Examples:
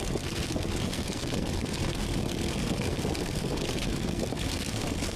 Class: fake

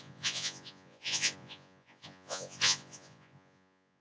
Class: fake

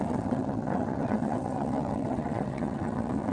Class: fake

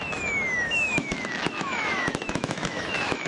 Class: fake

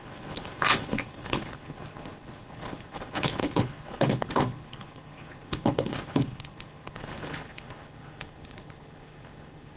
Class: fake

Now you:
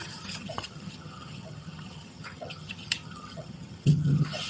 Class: fake